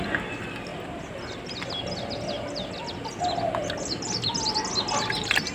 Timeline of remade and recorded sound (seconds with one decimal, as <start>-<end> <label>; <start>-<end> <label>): 0.0-5.5 recorded